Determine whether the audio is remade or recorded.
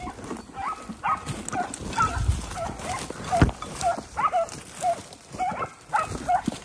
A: recorded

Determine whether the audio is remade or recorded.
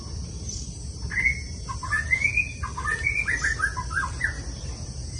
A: recorded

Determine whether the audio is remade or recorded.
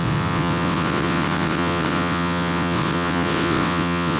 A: remade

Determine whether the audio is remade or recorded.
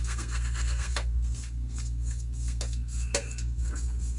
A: remade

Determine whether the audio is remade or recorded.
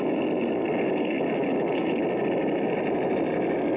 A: recorded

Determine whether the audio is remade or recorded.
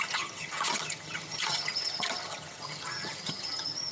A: remade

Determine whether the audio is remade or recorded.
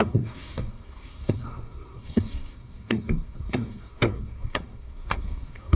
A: remade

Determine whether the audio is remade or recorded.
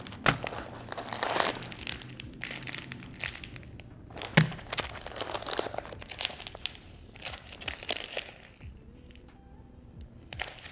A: recorded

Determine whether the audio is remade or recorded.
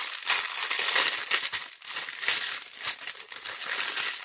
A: recorded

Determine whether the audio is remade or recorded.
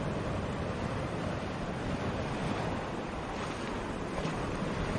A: recorded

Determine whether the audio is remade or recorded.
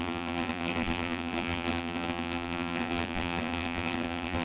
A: remade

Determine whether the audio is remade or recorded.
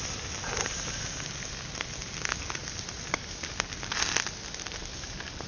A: recorded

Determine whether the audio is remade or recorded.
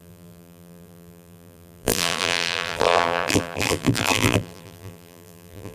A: remade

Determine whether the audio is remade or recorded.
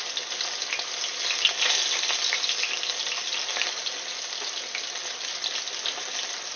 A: recorded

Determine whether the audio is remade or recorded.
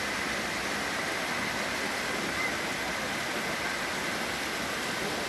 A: recorded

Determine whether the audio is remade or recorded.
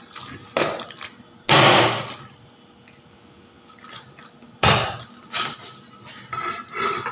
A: recorded